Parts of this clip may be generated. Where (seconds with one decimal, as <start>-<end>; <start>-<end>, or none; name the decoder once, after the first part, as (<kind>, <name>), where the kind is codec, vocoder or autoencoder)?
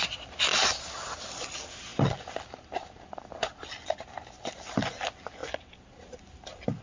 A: 1.9-4.8 (vocoder, BigVGAN v2); 5.4-6.8